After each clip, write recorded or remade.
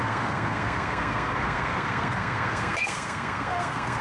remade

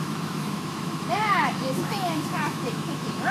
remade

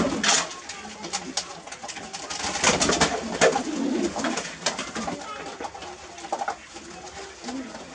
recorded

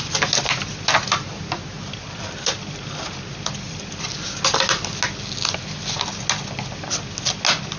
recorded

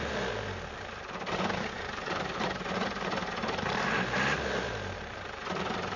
remade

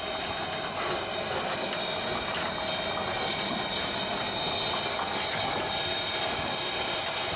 recorded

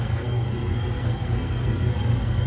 remade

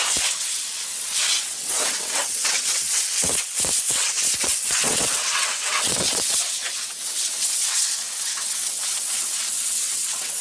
remade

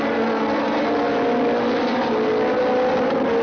recorded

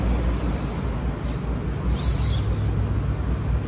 recorded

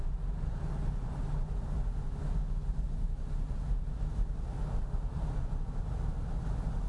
recorded